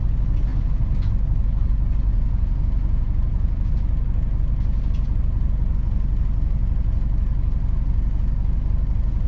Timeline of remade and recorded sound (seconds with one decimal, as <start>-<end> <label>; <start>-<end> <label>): 0.0-0.5 recorded; 0.5-1.1 remade; 1.1-2.1 recorded; 2.1-3.7 remade; 3.7-9.3 recorded

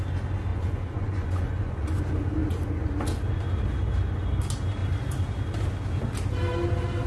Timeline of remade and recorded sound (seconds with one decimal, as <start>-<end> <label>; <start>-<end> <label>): 0.0-0.5 recorded; 0.5-2.0 remade; 2.0-7.1 recorded